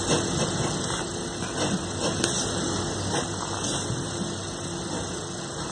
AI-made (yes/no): no